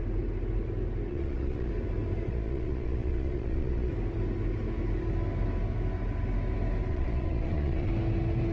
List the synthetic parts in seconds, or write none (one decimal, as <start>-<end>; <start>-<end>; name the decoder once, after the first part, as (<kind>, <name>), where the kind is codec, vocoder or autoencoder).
1.1-1.7 (vocoder, Vocos); 2.3-3.9; 6.9-7.9